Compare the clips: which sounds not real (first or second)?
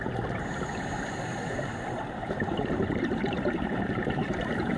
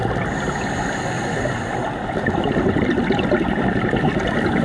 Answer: first